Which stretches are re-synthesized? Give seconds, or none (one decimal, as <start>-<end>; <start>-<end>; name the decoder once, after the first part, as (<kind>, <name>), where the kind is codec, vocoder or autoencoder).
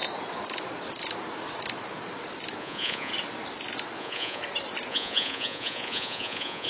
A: 2.6-3.1 (vocoder, Vocos); 4.0-4.4; 4.9-6.7